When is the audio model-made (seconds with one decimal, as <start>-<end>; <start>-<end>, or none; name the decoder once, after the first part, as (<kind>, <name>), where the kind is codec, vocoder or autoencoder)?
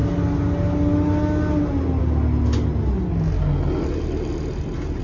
none